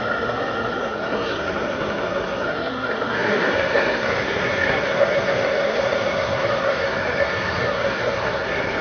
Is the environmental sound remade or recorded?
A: remade